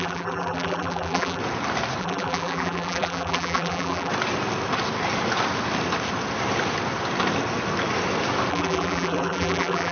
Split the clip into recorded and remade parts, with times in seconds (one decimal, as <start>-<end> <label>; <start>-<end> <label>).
0.0-1.4 remade; 1.4-2.0 recorded; 2.0-4.1 remade; 4.1-8.5 recorded; 8.5-9.9 remade